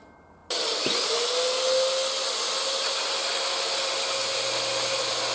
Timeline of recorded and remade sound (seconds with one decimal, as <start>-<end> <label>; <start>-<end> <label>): 0.0-5.3 recorded